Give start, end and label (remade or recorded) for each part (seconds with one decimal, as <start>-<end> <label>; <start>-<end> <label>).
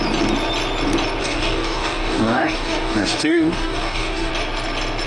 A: 0.0-1.2 recorded; 1.2-4.3 remade; 4.3-5.1 recorded